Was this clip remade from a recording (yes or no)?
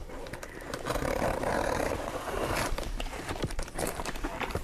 yes